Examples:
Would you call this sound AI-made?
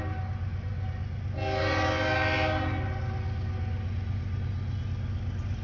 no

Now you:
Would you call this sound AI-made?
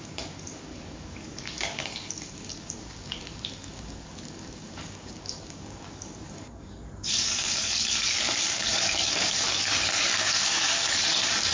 yes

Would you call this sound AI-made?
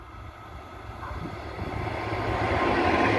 no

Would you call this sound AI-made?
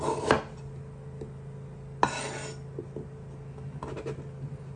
no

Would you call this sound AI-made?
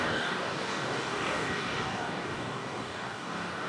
yes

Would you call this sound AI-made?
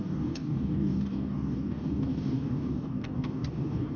yes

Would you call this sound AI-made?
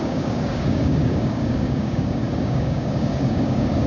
yes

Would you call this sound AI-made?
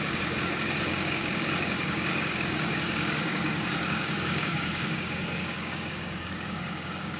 yes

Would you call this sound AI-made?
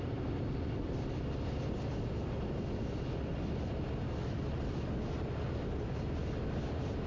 no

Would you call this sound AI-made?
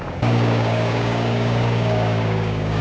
yes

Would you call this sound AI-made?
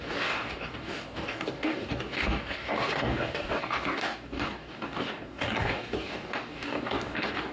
yes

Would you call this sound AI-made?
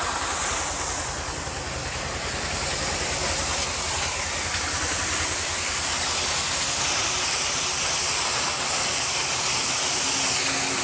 no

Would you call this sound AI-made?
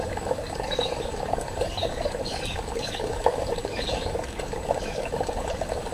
yes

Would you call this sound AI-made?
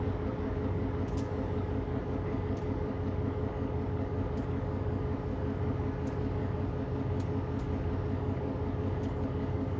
yes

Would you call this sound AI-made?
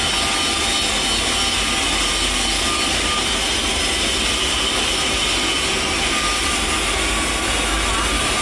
no